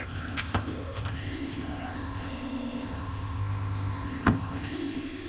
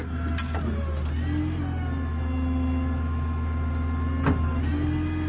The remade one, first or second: first